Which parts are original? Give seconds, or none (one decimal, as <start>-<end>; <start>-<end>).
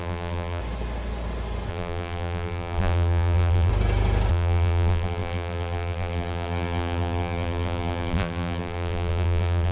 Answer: 0.6-1.7; 3.7-4.3